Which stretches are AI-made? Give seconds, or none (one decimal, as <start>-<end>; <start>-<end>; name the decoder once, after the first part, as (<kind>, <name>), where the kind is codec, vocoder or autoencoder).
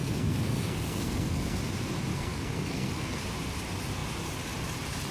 0.0-1.6 (codec, SNAC); 2.1-3.2